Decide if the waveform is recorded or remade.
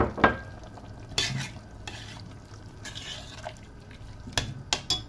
recorded